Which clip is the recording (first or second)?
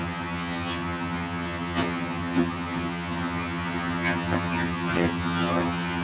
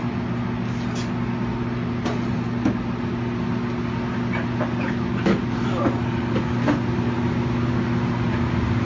second